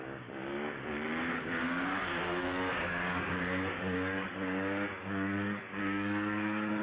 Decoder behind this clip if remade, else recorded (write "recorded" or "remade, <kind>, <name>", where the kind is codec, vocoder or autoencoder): remade, codec, DAC